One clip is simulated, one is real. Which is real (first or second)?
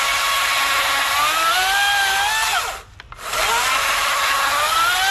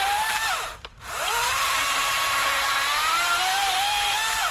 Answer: first